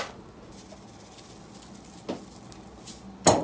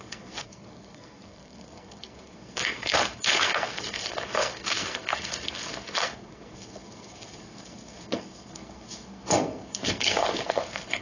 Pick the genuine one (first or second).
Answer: first